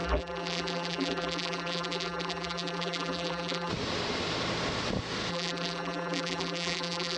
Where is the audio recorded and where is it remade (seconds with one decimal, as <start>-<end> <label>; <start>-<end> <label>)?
0.0-3.7 remade; 3.7-5.3 recorded; 5.3-7.2 remade